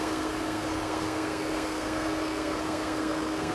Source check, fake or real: fake